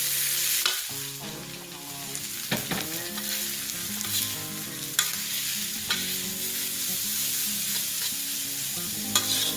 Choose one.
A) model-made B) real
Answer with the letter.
B